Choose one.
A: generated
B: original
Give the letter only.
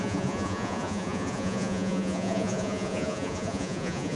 A